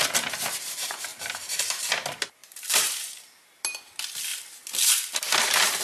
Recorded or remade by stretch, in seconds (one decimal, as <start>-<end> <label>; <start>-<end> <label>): 0.0-1.1 recorded; 1.1-1.8 remade; 1.8-2.4 recorded; 2.4-3.1 remade; 3.1-5.8 recorded